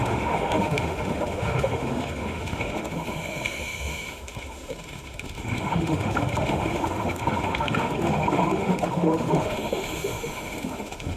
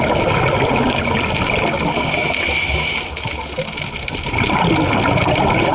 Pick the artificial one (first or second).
first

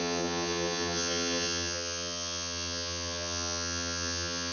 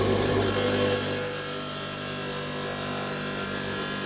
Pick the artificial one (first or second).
first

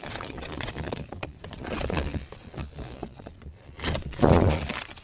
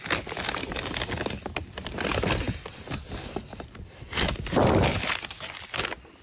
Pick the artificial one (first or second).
first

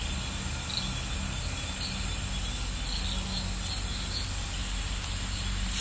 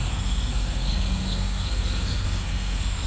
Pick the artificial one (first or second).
second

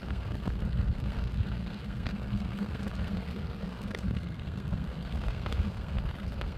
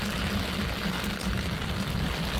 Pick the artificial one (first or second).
first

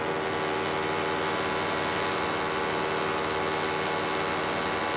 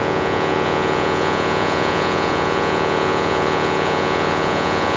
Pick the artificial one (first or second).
second